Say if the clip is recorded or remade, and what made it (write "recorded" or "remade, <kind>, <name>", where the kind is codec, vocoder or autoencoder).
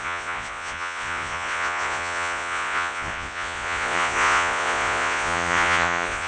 remade, vocoder, Vocos